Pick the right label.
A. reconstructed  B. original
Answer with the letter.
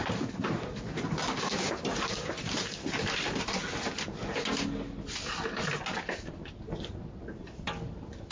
B